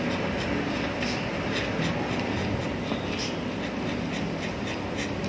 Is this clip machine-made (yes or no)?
no